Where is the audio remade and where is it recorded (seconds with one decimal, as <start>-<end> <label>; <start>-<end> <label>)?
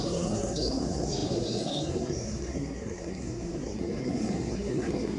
0.0-5.2 remade